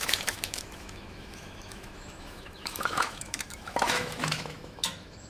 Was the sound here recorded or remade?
remade